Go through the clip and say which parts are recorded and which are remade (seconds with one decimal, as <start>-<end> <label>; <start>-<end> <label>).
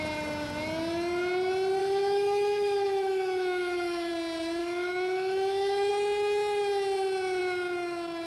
0.0-1.8 recorded; 1.8-4.1 remade; 4.1-4.6 recorded; 4.6-5.9 remade; 5.9-8.3 recorded